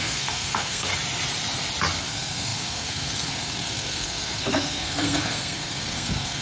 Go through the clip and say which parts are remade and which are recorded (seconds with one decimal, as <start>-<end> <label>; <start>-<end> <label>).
0.0-0.9 remade; 0.9-2.0 recorded; 2.0-6.4 remade